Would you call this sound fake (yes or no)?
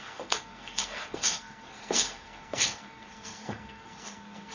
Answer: yes